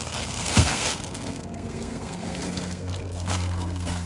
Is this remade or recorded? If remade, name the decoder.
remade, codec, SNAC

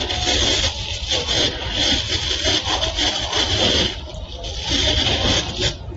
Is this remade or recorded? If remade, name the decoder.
recorded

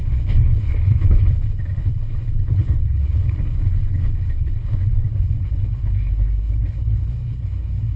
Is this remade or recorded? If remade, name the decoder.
remade, codec, HILCodec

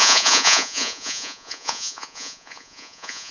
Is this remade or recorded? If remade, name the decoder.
remade, vocoder, Vocos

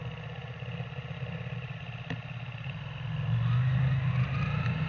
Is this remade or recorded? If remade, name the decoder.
recorded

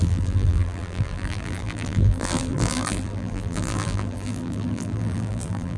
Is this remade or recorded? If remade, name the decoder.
remade, vocoder, BigVGAN v2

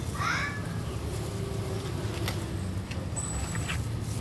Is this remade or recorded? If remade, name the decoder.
recorded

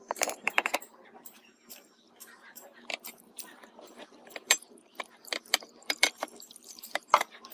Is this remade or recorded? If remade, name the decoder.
remade, vocoder, BigVGAN v2